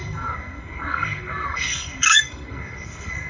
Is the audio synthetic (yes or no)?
yes